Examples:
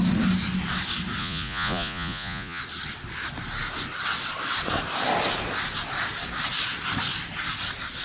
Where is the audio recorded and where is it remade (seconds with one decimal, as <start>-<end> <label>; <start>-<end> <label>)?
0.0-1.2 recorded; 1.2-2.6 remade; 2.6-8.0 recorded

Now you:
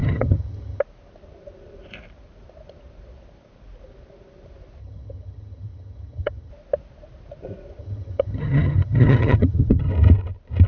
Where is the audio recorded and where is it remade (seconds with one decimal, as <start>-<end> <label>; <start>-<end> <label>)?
0.0-0.8 remade; 0.8-4.8 recorded; 4.8-6.5 remade; 6.5-7.8 recorded; 7.8-9.9 remade; 9.9-10.7 recorded

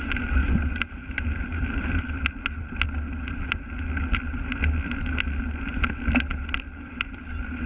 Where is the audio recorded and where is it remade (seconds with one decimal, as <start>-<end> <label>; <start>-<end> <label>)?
0.0-0.4 recorded; 0.4-2.0 remade; 2.0-7.7 recorded